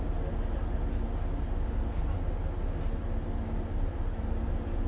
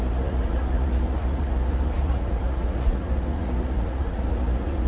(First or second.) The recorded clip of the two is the first